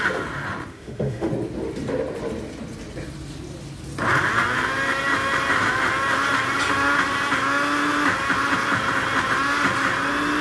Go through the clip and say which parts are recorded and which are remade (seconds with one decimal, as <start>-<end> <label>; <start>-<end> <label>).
0.0-0.7 recorded; 0.7-1.3 remade; 1.3-10.4 recorded